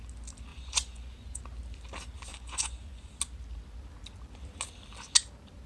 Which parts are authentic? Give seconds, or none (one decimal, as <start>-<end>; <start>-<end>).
0.0-0.5; 1.4-2.3; 3.1-5.7